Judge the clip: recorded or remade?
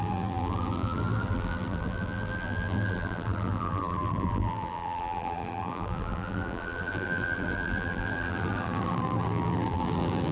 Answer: remade